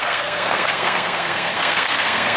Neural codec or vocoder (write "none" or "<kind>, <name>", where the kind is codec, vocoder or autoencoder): codec, SNAC